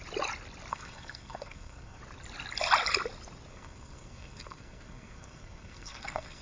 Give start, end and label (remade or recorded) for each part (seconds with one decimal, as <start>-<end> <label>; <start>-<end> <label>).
0.0-0.7 recorded; 0.7-2.0 remade; 2.0-3.5 recorded; 3.5-6.4 remade

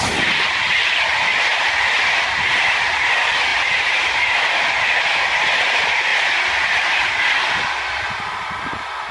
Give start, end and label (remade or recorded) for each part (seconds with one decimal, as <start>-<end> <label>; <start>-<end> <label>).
0.0-9.1 recorded